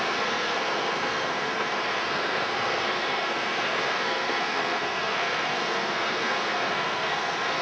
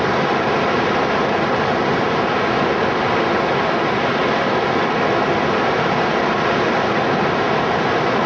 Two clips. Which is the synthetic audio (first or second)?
first